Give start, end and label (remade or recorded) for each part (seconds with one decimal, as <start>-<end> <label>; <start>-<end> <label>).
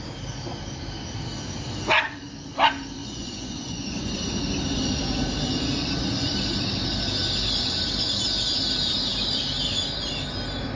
0.0-3.0 recorded; 3.0-4.1 remade; 4.1-10.8 recorded